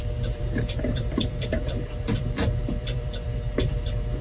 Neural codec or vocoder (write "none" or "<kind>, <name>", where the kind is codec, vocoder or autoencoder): vocoder, BigVGAN v2